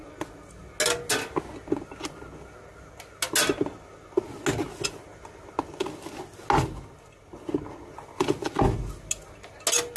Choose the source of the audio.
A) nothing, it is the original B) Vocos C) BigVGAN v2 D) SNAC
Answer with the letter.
A